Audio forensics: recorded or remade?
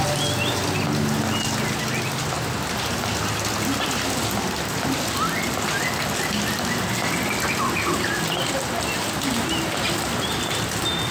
recorded